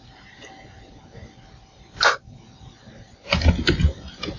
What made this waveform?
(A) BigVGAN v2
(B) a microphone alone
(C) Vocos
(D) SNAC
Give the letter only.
B